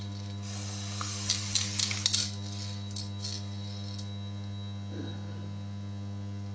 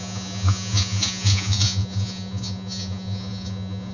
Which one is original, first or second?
first